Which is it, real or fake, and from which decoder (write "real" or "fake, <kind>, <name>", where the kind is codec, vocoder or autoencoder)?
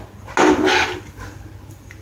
real